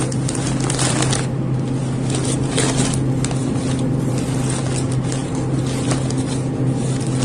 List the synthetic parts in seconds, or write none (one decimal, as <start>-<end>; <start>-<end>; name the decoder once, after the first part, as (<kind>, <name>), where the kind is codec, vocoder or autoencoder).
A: none